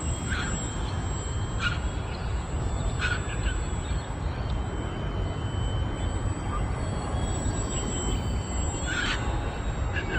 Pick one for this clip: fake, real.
real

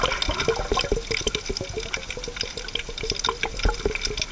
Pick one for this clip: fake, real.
real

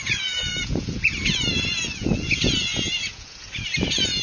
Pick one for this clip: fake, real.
fake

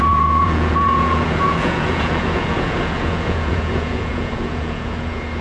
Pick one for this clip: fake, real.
fake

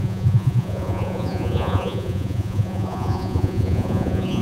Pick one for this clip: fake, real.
fake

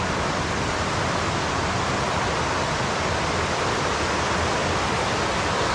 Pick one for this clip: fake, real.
real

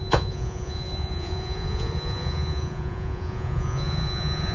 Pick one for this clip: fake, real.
fake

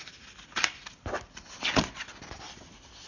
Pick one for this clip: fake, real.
real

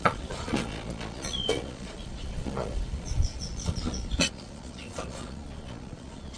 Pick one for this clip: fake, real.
fake